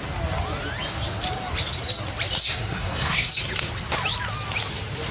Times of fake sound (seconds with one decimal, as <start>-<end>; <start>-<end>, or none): 2.4-3.3